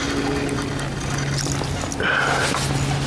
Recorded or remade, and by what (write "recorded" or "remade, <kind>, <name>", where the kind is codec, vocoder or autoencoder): recorded